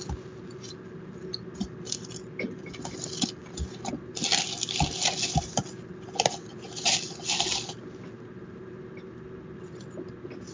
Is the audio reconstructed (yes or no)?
no